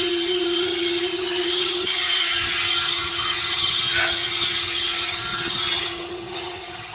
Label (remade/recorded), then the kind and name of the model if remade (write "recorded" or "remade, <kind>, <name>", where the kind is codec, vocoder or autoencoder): remade, vocoder, HiFi-GAN